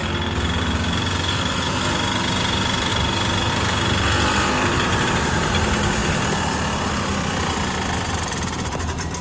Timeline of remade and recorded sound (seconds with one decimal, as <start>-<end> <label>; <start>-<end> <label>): 0.0-0.6 recorded; 0.6-2.9 remade; 2.9-3.5 recorded; 3.5-6.0 remade; 6.0-6.9 recorded; 6.9-9.2 remade